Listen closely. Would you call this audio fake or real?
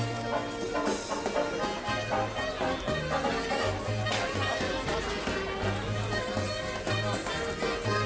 real